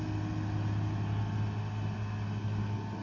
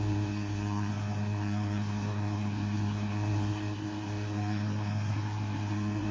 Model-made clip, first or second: second